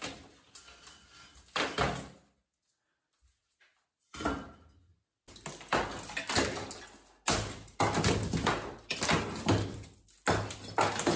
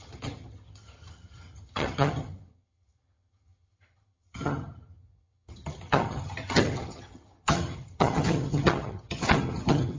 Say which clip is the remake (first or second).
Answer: second